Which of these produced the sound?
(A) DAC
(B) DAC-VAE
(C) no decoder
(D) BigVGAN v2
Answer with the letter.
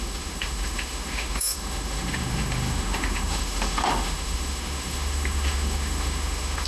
B